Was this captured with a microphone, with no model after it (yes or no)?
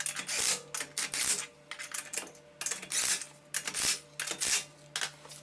yes